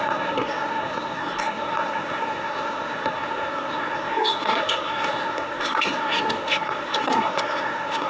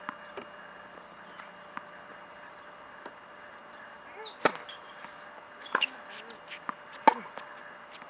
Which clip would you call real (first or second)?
second